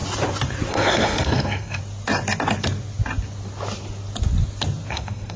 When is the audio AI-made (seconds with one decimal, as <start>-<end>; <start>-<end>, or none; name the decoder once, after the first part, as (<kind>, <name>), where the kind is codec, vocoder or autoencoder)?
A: 0.7-1.8 (codec, SNAC); 4.9-5.4